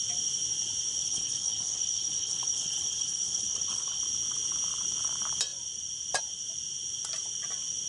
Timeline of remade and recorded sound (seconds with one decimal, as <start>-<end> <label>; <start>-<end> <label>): 0.0-1.0 recorded; 1.0-4.0 remade; 4.0-7.9 recorded